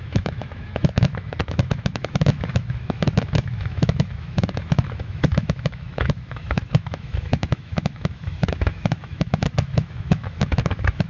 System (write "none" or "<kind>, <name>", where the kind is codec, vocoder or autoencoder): autoencoder, DAC-VAE